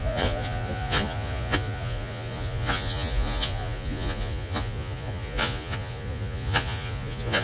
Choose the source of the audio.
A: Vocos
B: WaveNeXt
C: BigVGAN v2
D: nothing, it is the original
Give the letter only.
A